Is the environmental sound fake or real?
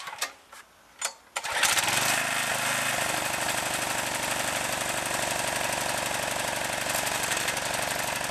real